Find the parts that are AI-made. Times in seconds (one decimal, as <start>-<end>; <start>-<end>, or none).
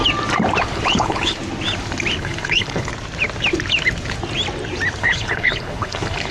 0.6-1.4; 2.2-2.9; 5.0-6.3